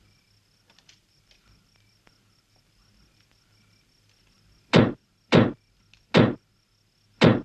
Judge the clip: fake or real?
real